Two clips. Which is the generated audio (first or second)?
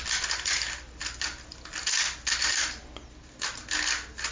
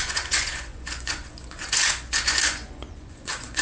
second